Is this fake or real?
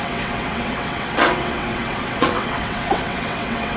fake